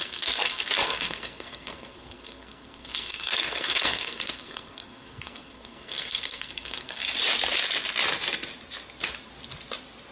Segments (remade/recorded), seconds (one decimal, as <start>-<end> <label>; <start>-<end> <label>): 0.0-7.0 remade; 7.0-10.1 recorded